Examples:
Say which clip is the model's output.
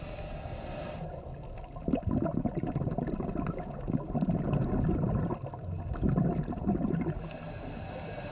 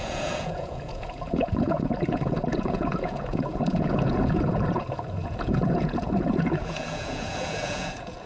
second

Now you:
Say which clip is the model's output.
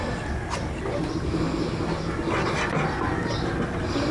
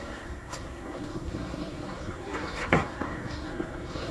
second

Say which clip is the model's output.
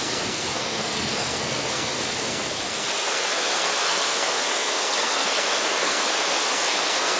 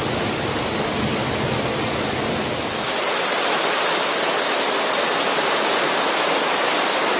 first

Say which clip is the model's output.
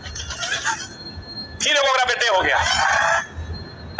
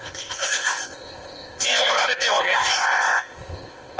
second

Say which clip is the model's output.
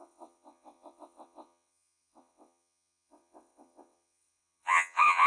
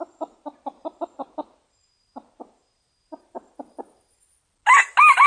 first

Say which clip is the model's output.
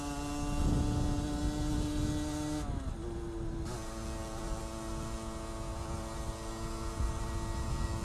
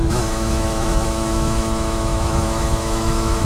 second